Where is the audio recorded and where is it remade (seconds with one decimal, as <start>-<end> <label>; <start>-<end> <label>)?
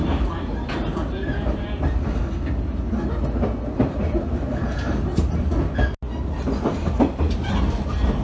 0.0-8.2 recorded